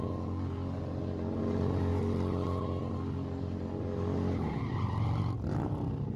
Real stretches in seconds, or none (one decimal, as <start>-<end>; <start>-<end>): 0.0-6.2